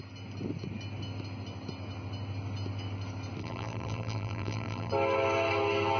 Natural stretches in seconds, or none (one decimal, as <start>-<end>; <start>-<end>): 0.0-3.4; 4.9-6.0

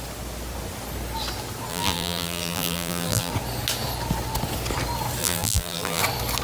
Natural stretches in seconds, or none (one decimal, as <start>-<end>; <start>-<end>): 0.0-1.7; 3.3-5.2; 6.0-6.4

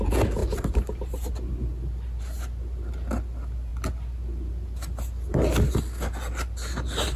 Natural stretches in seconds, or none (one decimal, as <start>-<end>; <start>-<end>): 0.0-7.2

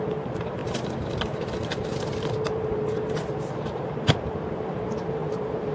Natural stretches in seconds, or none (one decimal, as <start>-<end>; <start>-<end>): none

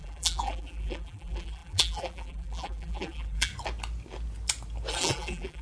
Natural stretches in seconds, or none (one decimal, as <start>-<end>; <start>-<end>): 3.5-4.9

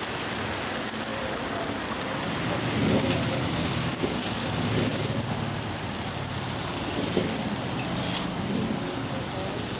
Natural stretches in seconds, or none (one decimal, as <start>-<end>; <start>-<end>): 0.0-1.1; 1.8-9.8

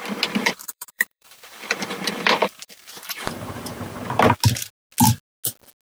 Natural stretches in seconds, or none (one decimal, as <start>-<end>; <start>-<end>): 0.0-0.4; 3.9-5.8

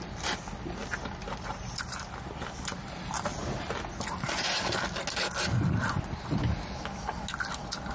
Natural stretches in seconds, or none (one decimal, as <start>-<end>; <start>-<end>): 0.8-2.6; 3.4-7.9